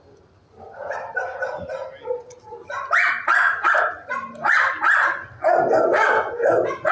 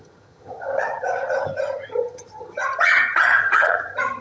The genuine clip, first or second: first